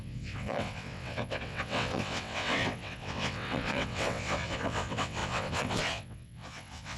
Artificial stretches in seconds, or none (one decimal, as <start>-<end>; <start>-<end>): 0.0-7.0